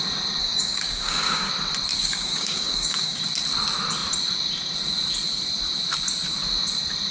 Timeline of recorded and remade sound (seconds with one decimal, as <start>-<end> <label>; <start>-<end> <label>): 0.0-0.4 recorded; 0.4-1.5 remade; 1.5-1.9 recorded; 1.9-3.2 remade; 3.2-7.1 recorded